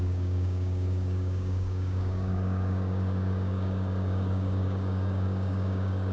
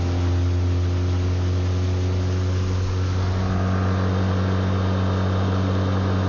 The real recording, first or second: second